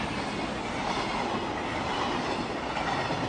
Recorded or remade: recorded